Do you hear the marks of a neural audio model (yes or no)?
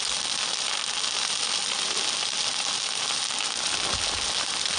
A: no